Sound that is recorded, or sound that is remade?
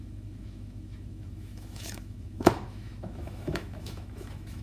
remade